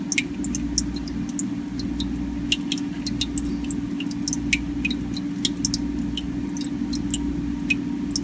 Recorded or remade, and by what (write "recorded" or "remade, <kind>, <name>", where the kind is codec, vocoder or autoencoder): recorded